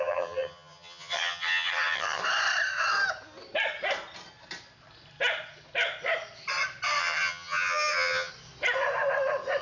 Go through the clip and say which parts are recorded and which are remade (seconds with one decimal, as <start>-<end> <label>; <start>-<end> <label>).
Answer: 0.0-2.2 remade; 2.2-7.0 recorded; 7.0-8.3 remade; 8.3-9.6 recorded